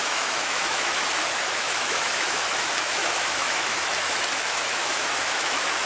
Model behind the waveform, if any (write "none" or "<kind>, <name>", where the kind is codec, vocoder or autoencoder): autoencoder, DAC-VAE